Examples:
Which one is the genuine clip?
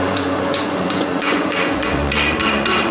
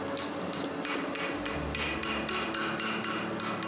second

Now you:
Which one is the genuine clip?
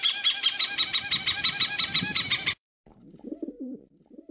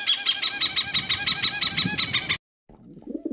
second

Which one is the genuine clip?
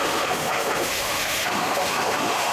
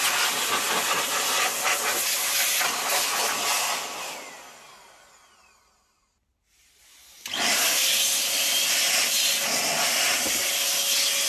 second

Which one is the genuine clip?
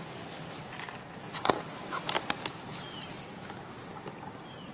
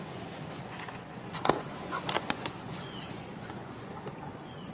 first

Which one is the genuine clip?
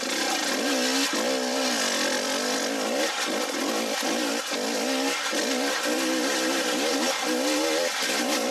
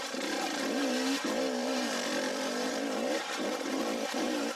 first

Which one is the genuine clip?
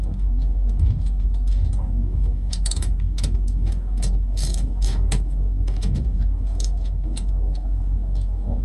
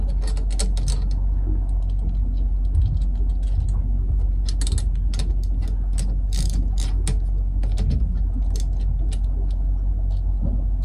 second